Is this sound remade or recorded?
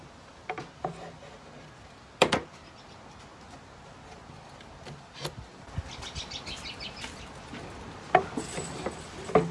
recorded